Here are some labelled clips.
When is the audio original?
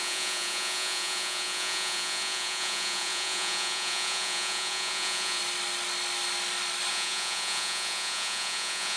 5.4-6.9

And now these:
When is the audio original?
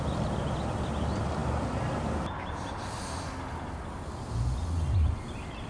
0.0-5.7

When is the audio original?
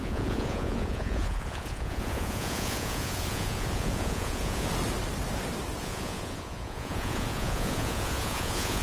4.7-5.8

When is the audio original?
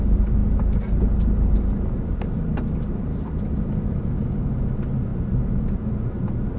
0.0-6.6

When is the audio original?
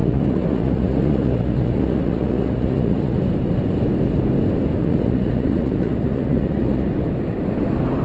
3.2-4.8; 6.9-8.0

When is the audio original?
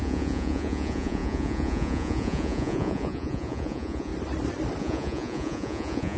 4.1-4.8